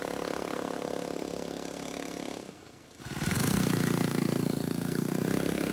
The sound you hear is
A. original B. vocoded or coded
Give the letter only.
B